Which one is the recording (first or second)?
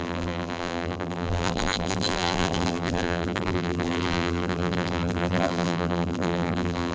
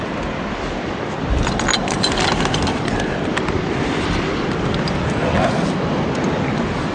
second